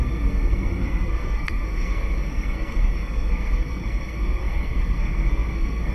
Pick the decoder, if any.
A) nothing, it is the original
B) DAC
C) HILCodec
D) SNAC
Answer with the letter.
D